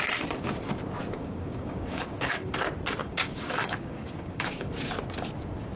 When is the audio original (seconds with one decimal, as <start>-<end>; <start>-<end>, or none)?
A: 0.0-1.2; 2.5-3.0; 4.7-5.8